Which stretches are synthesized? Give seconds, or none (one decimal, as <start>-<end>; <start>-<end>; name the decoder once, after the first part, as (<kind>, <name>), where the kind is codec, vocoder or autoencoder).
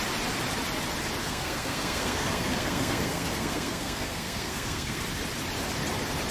1.2-5.0 (codec, SNAC)